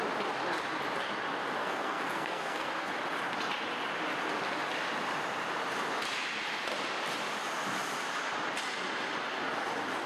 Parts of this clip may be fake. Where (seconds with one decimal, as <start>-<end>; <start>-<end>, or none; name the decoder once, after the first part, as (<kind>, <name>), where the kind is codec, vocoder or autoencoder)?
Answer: 1.6-2.9 (codec, SNAC)

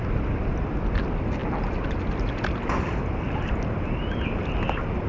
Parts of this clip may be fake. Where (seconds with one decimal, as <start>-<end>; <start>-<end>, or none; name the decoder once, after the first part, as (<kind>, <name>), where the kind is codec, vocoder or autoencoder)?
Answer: none